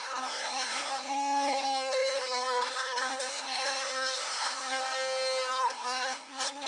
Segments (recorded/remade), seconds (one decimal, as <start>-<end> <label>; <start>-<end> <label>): 0.0-4.8 remade; 4.8-5.5 recorded; 5.5-6.7 remade